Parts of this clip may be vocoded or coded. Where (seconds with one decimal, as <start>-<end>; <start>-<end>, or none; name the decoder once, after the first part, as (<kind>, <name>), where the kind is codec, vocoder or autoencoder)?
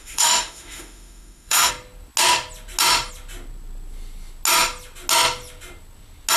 0.0-1.7 (autoencoder, DAC-VAE)